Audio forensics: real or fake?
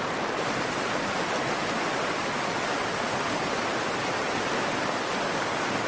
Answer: real